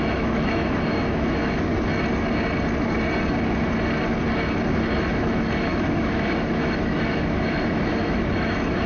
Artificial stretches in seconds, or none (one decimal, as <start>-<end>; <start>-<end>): 0.0-1.7; 5.1-8.9